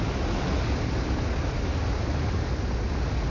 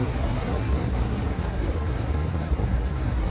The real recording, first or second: first